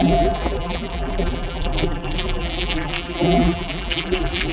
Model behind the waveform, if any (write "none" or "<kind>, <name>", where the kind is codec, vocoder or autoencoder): vocoder, BigVGAN v2